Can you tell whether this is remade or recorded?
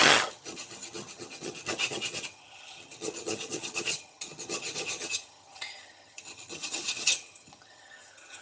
remade